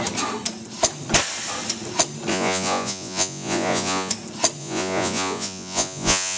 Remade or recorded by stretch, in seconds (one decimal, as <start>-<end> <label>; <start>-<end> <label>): 0.0-2.3 recorded; 2.3-4.1 remade; 4.1-4.6 recorded; 4.6-6.4 remade

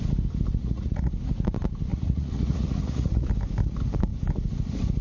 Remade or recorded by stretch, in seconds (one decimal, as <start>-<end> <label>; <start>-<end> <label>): 0.0-0.6 recorded; 0.6-1.1 remade; 1.1-1.9 recorded; 1.9-3.3 remade; 3.3-5.0 recorded

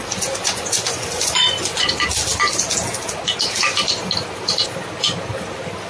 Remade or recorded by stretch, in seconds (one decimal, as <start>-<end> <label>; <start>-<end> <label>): 0.0-0.4 recorded; 0.4-1.9 remade; 1.9-5.9 recorded

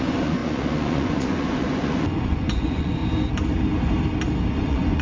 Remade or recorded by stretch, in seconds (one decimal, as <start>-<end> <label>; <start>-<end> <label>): 0.0-3.0 remade; 3.0-4.5 recorded; 4.5-5.0 remade

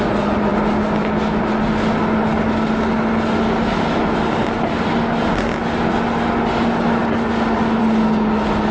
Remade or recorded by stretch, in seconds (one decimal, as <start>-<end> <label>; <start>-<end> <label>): 0.0-8.7 recorded

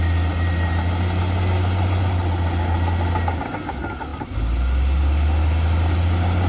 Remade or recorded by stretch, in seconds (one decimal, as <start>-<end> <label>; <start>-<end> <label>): 0.0-6.5 recorded